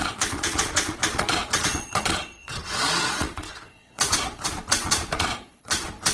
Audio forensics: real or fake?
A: fake